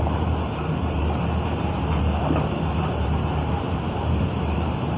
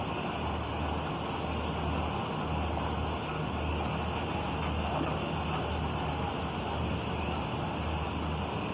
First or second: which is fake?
first